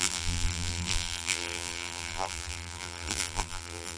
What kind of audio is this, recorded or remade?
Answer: remade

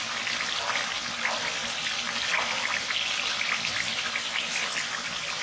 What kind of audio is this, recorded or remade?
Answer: recorded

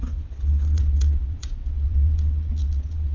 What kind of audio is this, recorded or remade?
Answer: remade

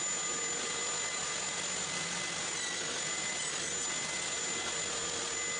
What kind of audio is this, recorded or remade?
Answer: recorded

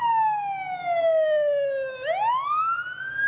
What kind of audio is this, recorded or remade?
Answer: recorded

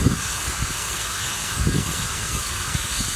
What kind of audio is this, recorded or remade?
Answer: remade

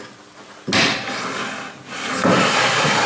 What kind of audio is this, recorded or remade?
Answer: recorded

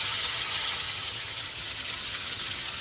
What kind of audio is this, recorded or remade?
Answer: remade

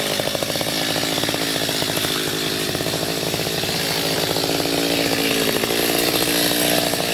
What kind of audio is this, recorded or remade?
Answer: recorded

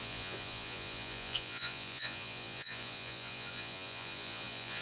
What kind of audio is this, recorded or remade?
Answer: remade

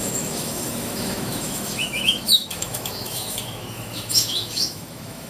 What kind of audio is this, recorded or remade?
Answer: remade